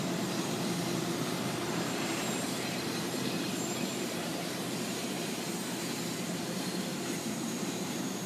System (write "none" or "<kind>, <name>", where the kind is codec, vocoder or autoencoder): vocoder, BigVGAN v2